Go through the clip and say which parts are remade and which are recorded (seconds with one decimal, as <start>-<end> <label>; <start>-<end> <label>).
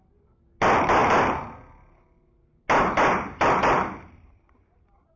0.0-5.2 recorded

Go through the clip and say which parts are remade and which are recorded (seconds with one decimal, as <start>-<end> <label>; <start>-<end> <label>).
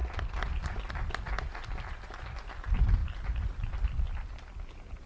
0.0-3.0 recorded; 3.0-3.7 remade; 3.7-5.1 recorded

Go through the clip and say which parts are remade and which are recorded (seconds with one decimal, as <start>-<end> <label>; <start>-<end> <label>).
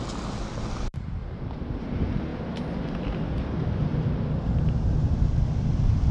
0.0-1.2 remade; 1.2-1.8 recorded; 1.8-2.3 remade; 2.3-3.5 recorded; 3.5-6.1 remade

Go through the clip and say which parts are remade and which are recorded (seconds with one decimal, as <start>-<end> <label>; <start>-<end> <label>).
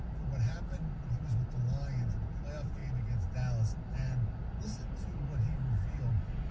0.0-6.5 recorded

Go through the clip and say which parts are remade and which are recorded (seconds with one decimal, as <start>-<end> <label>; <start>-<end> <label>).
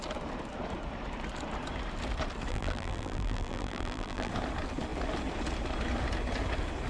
0.0-2.5 recorded; 2.5-4.3 remade; 4.3-6.9 recorded